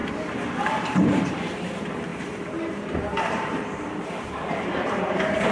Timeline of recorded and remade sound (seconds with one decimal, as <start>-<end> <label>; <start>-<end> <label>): 0.0-0.9 recorded; 0.9-5.5 remade